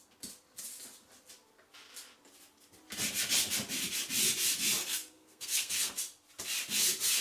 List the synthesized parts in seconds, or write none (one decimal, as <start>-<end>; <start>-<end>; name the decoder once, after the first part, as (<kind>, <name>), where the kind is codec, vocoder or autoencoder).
4.8-5.9 (codec, SNAC)